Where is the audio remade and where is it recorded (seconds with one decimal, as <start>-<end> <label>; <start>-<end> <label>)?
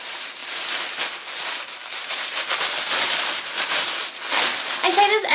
0.0-0.4 remade; 0.4-1.3 recorded; 1.3-4.0 remade; 4.0-5.3 recorded